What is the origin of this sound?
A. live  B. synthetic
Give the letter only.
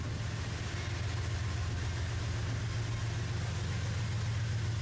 A